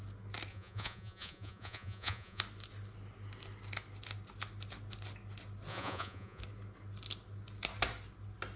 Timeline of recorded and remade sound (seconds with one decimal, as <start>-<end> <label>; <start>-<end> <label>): 0.0-0.5 recorded; 0.5-2.4 remade; 2.4-5.7 recorded; 5.7-6.4 remade; 6.4-8.6 recorded